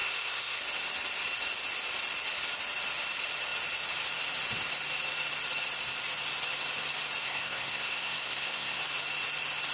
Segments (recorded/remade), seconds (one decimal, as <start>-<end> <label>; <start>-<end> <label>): 0.0-0.6 remade; 0.6-7.2 recorded; 7.2-8.8 remade; 8.8-9.7 recorded